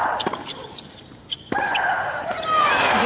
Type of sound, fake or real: fake